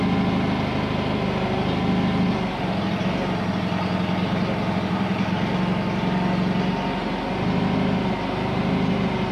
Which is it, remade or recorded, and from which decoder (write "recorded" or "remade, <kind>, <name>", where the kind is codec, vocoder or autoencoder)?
recorded